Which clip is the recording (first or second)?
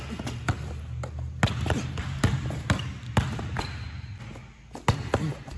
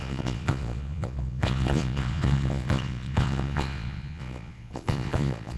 first